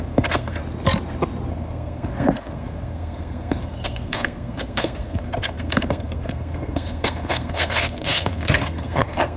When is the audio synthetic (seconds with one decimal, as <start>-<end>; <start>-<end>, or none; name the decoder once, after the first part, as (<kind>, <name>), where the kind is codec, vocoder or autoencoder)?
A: 0.0-0.6 (codec, SNAC); 1.5-9.4